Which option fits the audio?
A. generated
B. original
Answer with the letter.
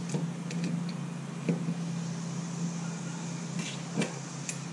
B